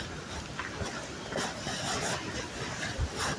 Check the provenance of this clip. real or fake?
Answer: real